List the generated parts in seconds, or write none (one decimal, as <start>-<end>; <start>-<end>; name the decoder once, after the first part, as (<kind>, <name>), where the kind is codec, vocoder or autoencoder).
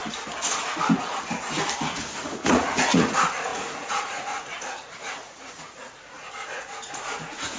2.2-7.6 (vocoder, Vocos)